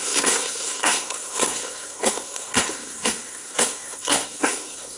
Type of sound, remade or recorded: remade